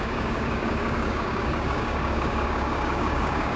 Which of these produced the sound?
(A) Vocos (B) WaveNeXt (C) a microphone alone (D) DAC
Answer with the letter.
D